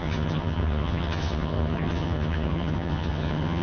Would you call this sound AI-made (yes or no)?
yes